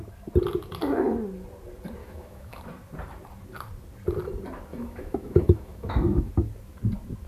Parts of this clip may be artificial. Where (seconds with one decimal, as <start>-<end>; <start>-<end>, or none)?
2.0-2.6; 4.7-6.3